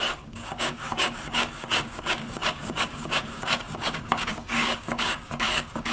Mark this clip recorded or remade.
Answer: remade